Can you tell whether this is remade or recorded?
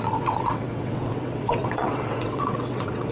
remade